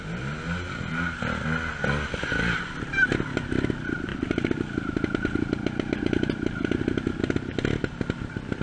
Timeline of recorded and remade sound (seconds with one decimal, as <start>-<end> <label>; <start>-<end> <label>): 0.0-4.1 recorded; 4.1-7.2 remade; 7.2-8.6 recorded